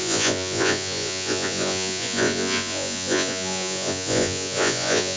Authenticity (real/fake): fake